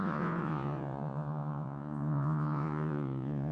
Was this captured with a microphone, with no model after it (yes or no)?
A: no